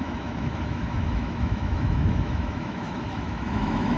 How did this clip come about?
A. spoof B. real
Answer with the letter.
A